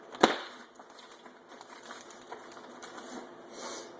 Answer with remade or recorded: recorded